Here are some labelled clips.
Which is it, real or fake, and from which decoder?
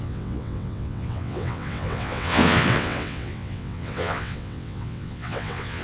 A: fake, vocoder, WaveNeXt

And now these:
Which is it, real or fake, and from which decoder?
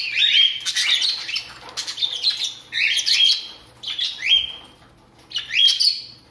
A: real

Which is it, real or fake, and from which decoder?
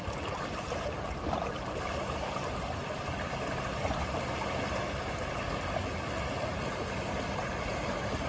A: real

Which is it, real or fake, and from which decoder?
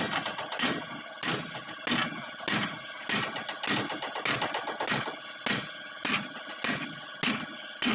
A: real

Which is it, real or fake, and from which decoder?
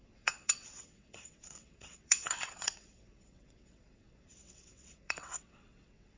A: fake, vocoder, WaveNeXt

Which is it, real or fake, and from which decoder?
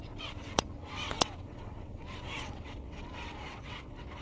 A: fake, vocoder, WaveNeXt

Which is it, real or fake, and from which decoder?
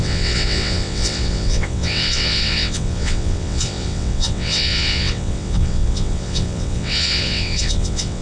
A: fake, vocoder, WaveNeXt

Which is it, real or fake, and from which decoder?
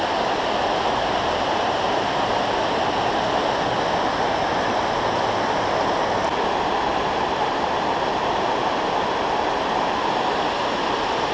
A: real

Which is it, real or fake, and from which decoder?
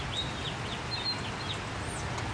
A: real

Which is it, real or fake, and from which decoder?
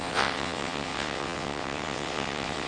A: fake, vocoder, WaveNeXt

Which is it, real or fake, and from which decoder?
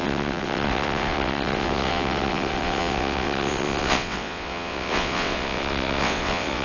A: fake, vocoder, WaveNeXt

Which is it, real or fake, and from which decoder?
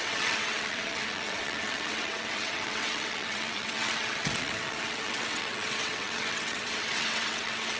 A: fake, vocoder, WaveNeXt